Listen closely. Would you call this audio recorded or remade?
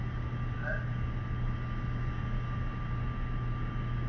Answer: recorded